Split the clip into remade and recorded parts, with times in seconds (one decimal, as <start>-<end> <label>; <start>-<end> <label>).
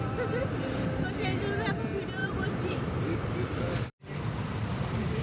0.0-0.4 recorded; 0.4-1.0 remade; 1.0-2.2 recorded; 2.2-5.2 remade